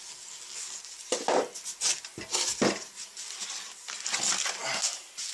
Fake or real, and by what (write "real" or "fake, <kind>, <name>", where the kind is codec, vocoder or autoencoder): real